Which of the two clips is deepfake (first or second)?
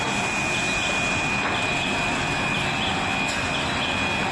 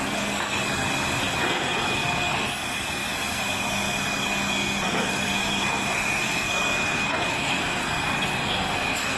second